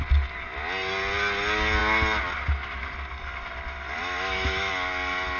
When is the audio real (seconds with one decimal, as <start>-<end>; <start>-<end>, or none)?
0.0-4.0; 4.7-5.4